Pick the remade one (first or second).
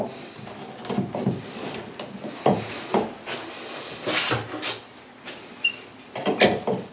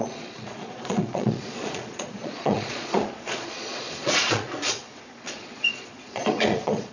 second